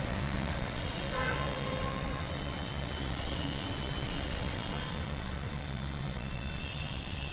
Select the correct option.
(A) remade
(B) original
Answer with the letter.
A